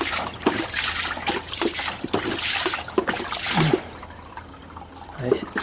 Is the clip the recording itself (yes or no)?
yes